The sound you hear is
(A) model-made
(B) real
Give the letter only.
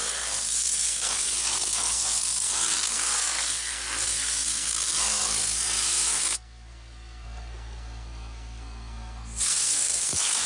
A